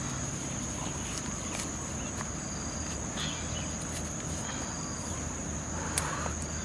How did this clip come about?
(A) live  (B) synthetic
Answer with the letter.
A